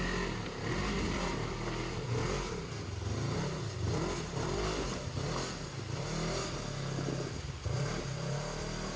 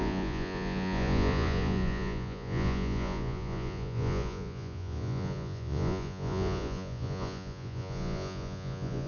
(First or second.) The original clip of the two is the first